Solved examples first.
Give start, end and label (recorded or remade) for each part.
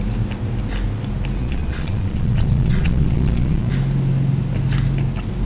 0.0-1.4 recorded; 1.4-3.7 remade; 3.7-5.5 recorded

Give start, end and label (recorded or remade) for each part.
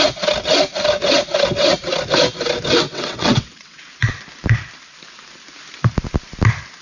0.0-2.8 recorded; 2.8-3.8 remade; 3.8-6.8 recorded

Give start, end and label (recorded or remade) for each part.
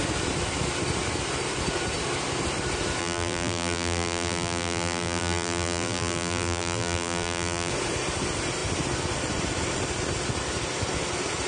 0.0-3.0 recorded; 3.0-7.7 remade; 7.7-11.5 recorded